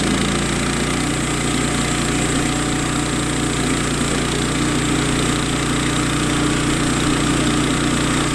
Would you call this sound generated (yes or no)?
no